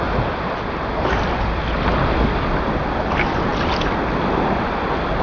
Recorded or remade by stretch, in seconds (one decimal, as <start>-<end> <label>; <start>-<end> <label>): 0.0-5.2 recorded

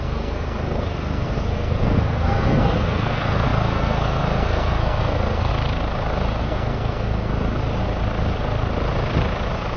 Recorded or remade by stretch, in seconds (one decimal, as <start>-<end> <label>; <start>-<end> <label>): 0.0-5.5 remade; 5.5-6.4 recorded; 6.4-7.3 remade; 7.3-9.8 recorded

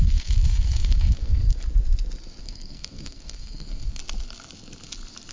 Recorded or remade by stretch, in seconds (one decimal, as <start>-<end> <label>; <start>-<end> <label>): 0.0-1.4 remade; 1.4-2.4 recorded; 2.4-4.0 remade; 4.0-5.3 recorded

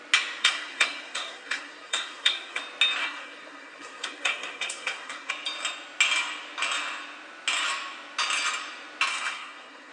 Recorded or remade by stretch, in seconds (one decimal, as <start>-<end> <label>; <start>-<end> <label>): 0.0-0.4 recorded; 0.4-2.6 remade; 2.6-3.0 recorded; 3.0-5.3 remade; 5.3-9.1 recorded; 9.1-9.9 remade

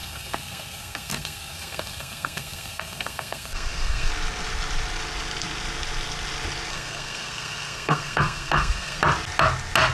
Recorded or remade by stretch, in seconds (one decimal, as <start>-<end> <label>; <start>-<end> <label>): 0.0-4.1 remade; 4.1-6.7 recorded; 6.7-9.0 remade; 9.0-9.9 recorded

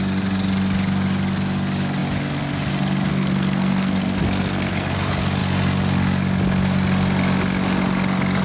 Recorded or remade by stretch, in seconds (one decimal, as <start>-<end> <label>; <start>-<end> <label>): 0.0-3.1 recorded; 3.1-4.9 remade; 4.9-8.4 recorded

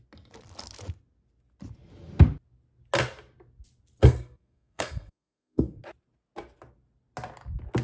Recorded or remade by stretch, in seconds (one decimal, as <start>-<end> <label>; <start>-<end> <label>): 0.0-4.0 recorded; 4.0-5.8 remade; 5.8-7.8 recorded

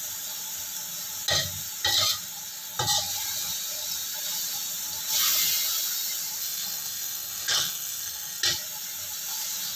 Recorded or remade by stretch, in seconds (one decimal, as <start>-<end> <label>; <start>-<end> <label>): 0.0-6.4 recorded; 6.4-8.4 remade; 8.4-9.8 recorded